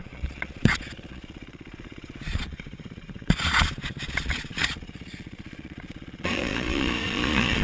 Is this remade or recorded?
remade